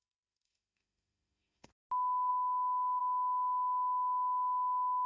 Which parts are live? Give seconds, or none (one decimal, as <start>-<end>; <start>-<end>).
1.7-2.3; 3.0-5.1